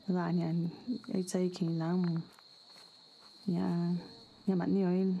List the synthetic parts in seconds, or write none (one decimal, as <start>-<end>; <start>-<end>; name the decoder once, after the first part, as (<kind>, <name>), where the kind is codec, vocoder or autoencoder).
0.9-1.5 (autoencoder, DAC-VAE); 2.5-4.5